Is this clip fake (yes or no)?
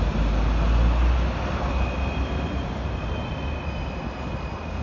no